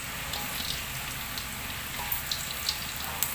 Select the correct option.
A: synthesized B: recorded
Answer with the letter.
B